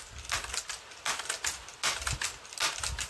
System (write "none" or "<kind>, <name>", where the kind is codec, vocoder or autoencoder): none